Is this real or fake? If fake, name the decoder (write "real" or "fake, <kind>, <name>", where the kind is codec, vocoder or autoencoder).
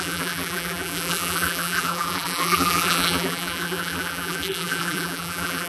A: fake, vocoder, BigVGAN v2